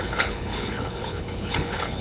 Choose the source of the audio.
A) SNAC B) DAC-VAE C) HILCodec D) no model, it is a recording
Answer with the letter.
C